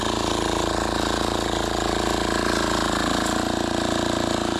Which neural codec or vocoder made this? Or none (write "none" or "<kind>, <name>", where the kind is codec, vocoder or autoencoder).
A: none